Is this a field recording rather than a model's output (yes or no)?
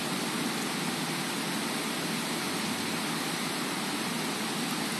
yes